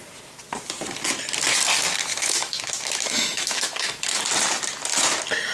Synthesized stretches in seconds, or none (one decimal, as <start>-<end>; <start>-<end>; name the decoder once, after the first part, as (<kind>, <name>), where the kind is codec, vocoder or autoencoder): 2.1-4.2 (autoencoder, DAC-VAE)